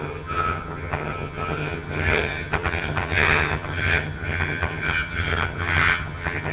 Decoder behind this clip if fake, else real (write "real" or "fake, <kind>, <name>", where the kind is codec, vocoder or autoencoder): fake, vocoder, HiFi-GAN